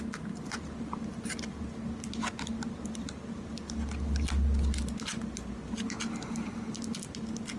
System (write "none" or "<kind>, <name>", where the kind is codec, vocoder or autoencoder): none